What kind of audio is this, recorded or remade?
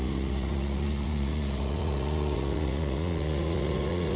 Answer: remade